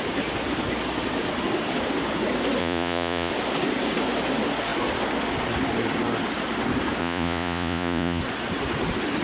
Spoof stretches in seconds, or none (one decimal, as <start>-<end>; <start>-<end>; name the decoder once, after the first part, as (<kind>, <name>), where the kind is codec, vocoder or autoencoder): 2.6-3.3 (vocoder, Vocos); 7.0-8.2